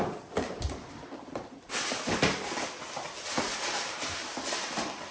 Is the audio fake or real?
real